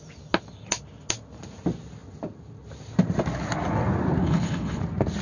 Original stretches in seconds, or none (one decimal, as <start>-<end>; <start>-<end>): 0.0-4.2; 4.8-5.2